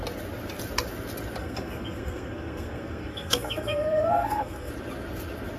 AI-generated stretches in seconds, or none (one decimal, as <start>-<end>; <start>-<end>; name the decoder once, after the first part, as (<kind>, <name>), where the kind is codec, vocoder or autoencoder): 1.4-4.7 (codec, SNAC)